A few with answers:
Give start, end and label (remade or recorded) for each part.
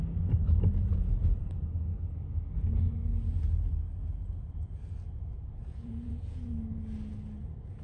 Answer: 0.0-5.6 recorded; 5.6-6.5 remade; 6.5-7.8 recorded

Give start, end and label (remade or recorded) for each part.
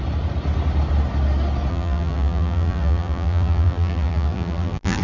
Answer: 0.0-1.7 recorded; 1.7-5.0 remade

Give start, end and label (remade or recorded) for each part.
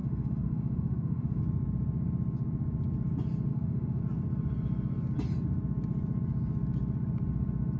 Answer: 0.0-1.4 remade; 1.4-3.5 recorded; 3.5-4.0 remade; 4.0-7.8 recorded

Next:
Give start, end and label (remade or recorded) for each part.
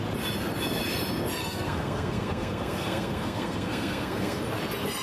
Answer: 0.0-1.4 recorded; 1.4-4.4 remade; 4.4-5.0 recorded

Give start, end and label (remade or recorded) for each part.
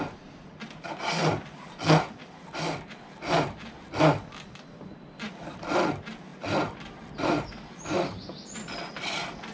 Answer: 0.0-1.2 recorded; 1.2-2.6 remade; 2.6-9.5 recorded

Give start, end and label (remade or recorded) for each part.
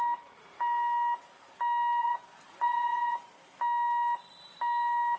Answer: 0.0-2.0 recorded; 2.0-3.3 remade; 3.3-5.2 recorded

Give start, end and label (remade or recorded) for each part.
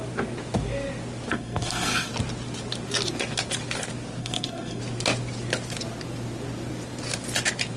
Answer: 0.0-1.3 recorded; 1.3-2.1 remade; 2.1-4.2 recorded; 4.2-4.8 remade; 4.8-7.8 recorded